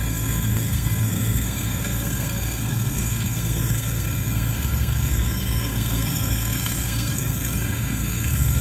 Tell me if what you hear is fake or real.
fake